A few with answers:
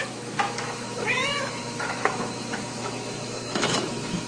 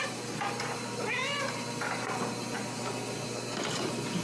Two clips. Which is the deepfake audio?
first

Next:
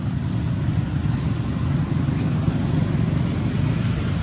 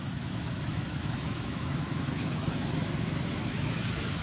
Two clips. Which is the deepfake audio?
second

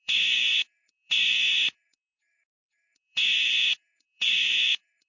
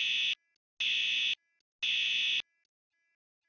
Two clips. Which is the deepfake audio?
first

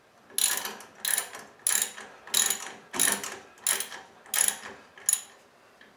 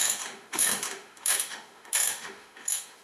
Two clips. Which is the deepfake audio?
second